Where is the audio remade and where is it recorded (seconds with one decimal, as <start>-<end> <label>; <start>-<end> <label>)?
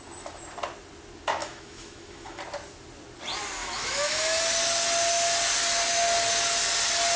0.0-1.4 recorded; 1.4-2.4 remade; 2.4-3.6 recorded; 3.6-4.4 remade; 4.4-7.2 recorded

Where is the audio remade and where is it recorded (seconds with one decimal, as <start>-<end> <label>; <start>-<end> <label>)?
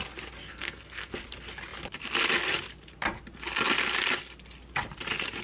0.0-0.4 recorded; 0.4-1.1 remade; 1.1-5.4 recorded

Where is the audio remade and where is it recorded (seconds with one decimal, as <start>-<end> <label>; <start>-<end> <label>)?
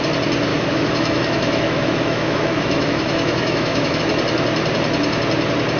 0.0-0.5 recorded; 0.5-4.0 remade; 4.0-5.8 recorded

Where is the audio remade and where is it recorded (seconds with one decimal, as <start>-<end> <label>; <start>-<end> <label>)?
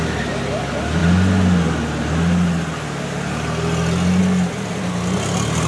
0.0-5.7 recorded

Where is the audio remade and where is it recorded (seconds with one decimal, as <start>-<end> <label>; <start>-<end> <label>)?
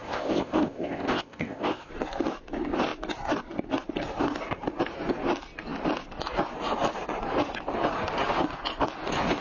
0.0-1.9 remade; 1.9-9.4 recorded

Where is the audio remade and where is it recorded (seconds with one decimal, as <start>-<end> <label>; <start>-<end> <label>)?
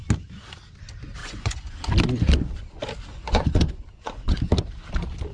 0.0-1.2 recorded; 1.2-1.9 remade; 1.9-3.1 recorded; 3.1-4.4 remade; 4.4-5.3 recorded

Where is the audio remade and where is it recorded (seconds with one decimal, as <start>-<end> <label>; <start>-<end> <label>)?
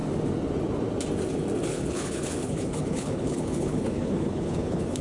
0.0-1.7 recorded; 1.7-5.0 remade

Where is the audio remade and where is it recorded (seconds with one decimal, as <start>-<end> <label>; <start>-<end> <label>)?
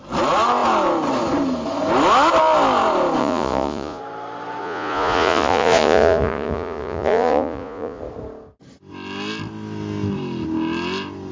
0.0-3.2 recorded; 3.2-4.0 remade; 4.0-4.6 recorded; 4.6-8.0 remade; 8.0-11.3 recorded